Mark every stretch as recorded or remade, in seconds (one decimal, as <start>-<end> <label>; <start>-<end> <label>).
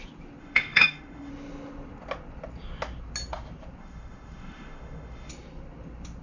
0.0-0.4 recorded; 0.4-1.3 remade; 1.3-3.8 recorded; 3.8-5.3 remade; 5.3-6.2 recorded